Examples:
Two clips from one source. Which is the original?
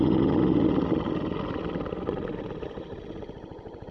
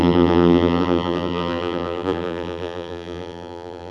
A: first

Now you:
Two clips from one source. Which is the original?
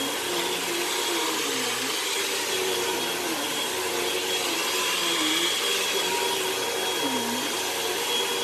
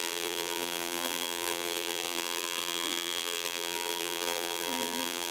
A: first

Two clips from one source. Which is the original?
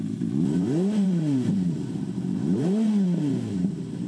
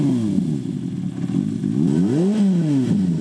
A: second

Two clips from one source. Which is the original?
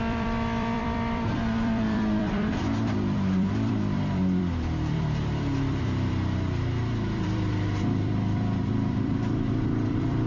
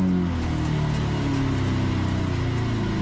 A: second